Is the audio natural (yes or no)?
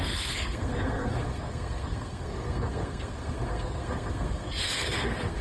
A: no